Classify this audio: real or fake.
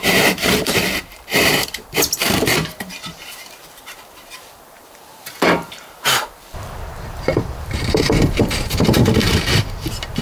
fake